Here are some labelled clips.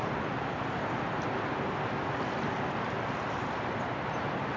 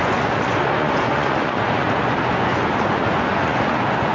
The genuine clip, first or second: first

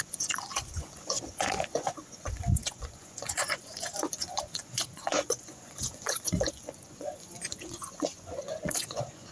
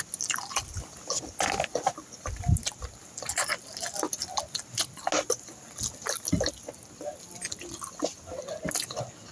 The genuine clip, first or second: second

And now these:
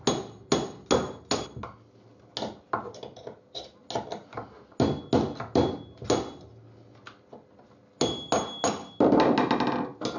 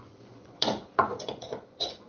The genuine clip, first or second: first